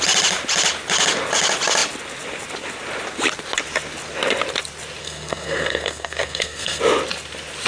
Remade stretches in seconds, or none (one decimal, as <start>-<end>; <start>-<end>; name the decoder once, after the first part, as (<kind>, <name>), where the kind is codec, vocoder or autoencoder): 5.0-6.8 (codec, SNAC)